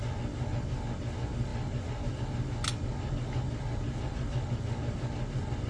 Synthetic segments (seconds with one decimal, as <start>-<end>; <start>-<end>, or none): none